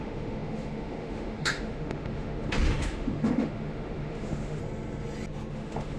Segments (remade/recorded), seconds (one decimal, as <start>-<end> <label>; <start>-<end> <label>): 0.0-4.6 remade; 4.6-5.5 recorded; 5.5-6.0 remade